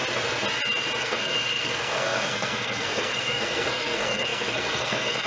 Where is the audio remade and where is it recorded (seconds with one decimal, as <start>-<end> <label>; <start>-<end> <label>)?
0.0-1.0 recorded; 1.0-5.3 remade

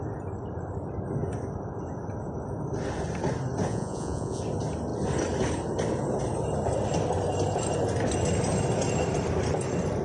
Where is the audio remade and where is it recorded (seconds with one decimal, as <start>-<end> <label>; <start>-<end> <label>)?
0.0-3.7 recorded; 3.7-4.4 remade; 4.4-10.0 recorded

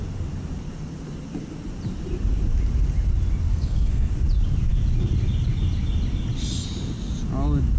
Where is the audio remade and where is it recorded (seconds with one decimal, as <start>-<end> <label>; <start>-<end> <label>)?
0.0-3.5 recorded; 3.5-4.1 remade; 4.1-7.8 recorded

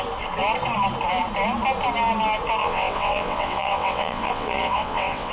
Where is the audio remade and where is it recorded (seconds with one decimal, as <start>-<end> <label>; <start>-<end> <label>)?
0.0-2.6 recorded; 2.6-5.3 remade

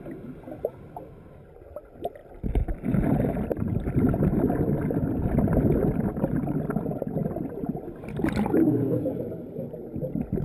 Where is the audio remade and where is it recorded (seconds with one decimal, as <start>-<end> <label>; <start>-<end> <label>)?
0.0-8.6 recorded; 8.6-9.1 remade; 9.1-10.4 recorded

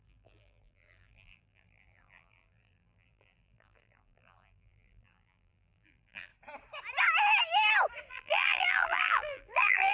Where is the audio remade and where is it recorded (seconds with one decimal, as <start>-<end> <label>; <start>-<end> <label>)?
0.0-6.3 remade; 6.3-8.1 recorded; 8.1-9.9 remade

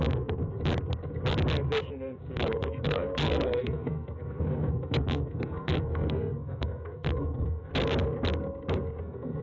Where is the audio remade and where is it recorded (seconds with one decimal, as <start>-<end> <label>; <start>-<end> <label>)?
0.0-0.4 remade; 0.4-1.8 recorded; 1.8-7.7 remade; 7.7-9.0 recorded; 9.0-9.4 remade

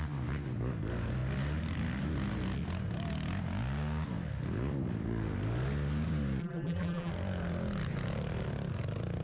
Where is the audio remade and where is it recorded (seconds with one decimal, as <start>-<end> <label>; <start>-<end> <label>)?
0.0-6.4 recorded; 6.4-7.1 remade; 7.1-9.2 recorded